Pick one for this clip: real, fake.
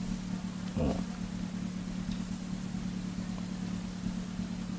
real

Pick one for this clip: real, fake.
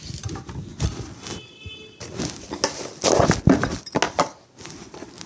real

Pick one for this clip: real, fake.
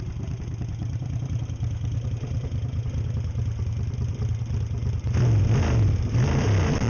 real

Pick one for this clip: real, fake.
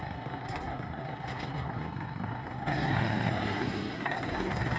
fake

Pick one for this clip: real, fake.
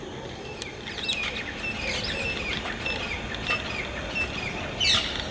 real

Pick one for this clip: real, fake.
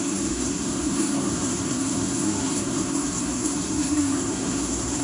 fake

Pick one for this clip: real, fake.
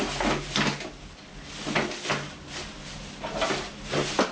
real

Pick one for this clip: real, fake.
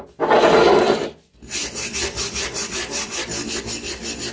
real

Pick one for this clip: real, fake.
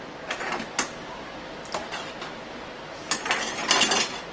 real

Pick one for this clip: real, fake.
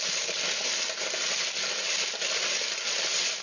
real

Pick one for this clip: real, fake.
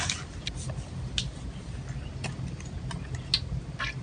real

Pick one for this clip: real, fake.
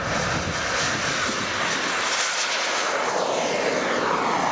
real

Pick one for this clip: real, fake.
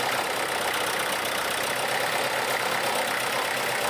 real